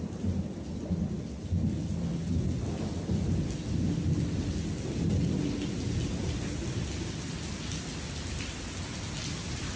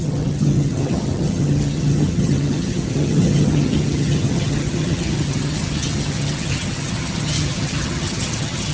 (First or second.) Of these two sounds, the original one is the first